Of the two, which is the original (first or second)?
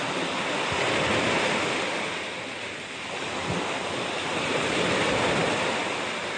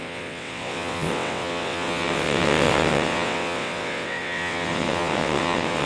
first